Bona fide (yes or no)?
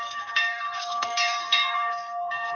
no